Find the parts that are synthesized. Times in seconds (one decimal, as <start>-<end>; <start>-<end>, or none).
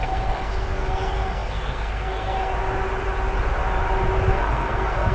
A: 0.0-2.5; 4.3-5.1